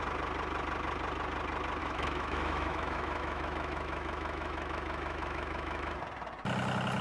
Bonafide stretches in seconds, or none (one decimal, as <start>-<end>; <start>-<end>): 0.0-1.8; 6.0-7.0